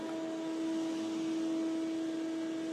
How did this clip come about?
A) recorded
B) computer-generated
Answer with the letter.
A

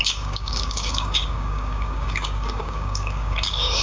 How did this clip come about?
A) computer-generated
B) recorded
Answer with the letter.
A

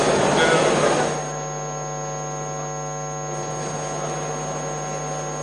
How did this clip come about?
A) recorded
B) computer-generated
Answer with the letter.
A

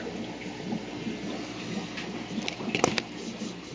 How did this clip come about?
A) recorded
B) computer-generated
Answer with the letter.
A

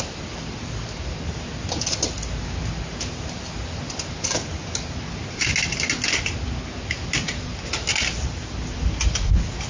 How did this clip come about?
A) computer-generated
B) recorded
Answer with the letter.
B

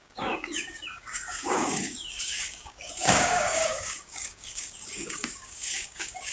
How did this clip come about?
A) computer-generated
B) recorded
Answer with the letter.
A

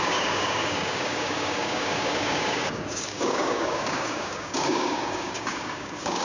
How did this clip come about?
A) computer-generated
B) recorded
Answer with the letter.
A